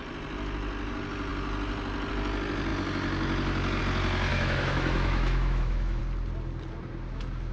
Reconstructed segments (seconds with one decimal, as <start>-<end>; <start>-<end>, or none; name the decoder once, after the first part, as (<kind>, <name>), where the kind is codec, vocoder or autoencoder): 4.3-6.0 (autoencoder, DAC-VAE)